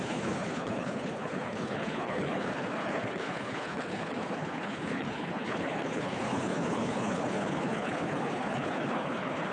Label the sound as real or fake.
fake